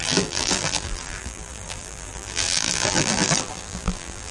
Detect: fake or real fake